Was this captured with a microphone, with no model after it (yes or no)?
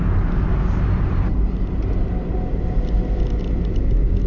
yes